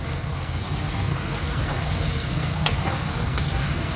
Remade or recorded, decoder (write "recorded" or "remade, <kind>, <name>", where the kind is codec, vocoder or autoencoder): remade, codec, SNAC